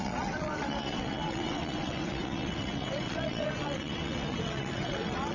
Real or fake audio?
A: fake